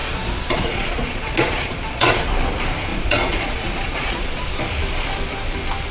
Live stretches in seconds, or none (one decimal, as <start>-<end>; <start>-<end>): 2.3-2.9; 4.6-5.9